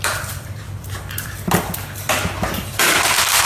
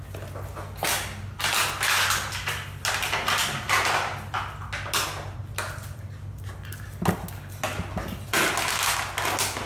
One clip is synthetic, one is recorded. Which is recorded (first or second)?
second